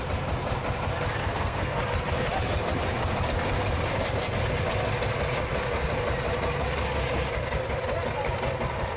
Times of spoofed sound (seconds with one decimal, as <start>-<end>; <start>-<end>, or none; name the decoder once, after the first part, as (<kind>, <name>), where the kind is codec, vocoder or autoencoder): 1.2-1.8 (codec, SNAC)